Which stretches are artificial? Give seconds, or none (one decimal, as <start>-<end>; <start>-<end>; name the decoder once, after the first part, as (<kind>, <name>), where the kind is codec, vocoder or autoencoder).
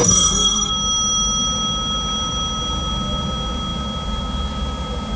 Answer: 0.0-0.7 (codec, SNAC)